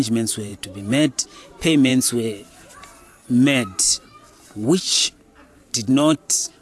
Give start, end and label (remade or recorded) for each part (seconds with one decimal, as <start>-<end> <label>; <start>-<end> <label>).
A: 0.0-1.9 remade; 1.9-5.9 recorded; 5.9-6.6 remade